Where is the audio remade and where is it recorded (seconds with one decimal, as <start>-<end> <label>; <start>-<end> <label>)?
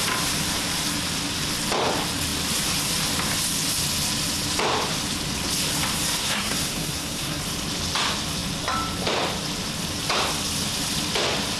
0.0-6.2 recorded; 6.2-7.4 remade; 7.4-11.6 recorded